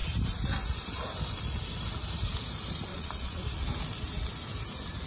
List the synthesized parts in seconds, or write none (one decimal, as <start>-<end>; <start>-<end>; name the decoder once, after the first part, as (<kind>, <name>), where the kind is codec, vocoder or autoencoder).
2.9-3.4 (vocoder, Vocos)

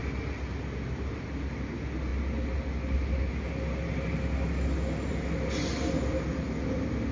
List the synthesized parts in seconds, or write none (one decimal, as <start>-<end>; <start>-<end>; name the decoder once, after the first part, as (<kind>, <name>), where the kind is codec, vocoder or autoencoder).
none

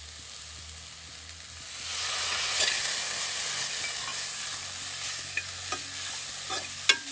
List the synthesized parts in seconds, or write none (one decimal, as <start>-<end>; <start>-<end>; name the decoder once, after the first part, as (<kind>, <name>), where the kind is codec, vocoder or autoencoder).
1.9-2.6 (vocoder, Vocos)

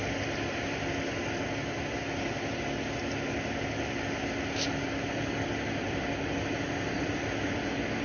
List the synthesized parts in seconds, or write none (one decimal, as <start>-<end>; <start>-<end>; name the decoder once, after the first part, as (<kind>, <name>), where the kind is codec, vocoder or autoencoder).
none

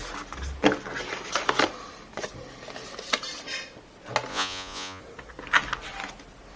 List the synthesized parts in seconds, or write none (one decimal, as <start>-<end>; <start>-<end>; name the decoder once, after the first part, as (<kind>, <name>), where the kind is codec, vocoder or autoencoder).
4.3-5.0 (vocoder, Vocos)